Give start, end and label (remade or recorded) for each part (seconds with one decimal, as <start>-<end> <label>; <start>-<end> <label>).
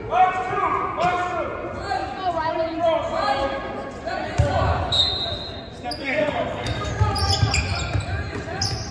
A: 0.0-6.0 recorded; 6.0-6.9 remade; 6.9-8.9 recorded